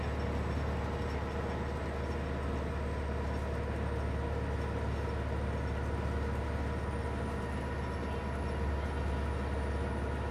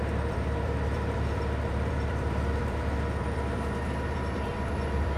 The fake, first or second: second